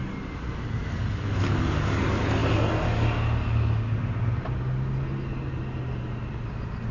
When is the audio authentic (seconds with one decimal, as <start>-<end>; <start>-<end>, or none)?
0.0-6.9